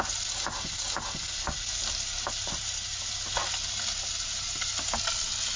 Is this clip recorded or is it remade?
recorded